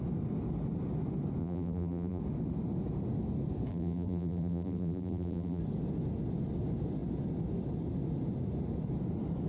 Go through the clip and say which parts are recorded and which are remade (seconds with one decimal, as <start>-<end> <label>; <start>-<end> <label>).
0.0-1.4 recorded; 1.4-2.2 remade; 2.2-3.7 recorded; 3.7-5.6 remade; 5.6-9.5 recorded